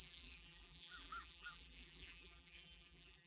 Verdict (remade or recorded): remade